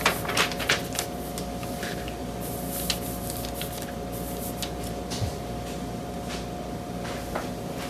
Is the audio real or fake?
real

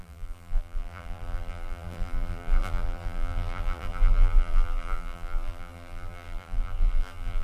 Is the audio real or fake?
fake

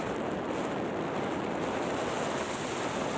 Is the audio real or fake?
real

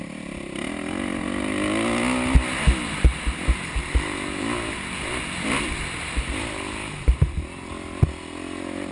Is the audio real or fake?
real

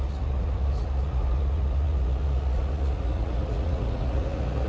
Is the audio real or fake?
fake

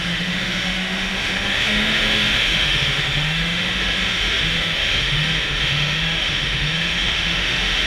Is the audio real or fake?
fake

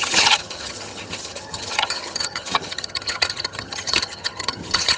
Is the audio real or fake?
fake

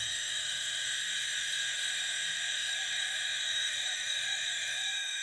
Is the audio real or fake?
fake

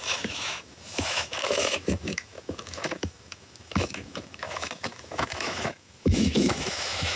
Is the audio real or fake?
fake